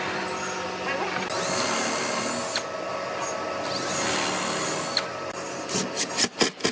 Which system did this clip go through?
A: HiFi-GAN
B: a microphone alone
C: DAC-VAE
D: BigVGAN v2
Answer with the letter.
B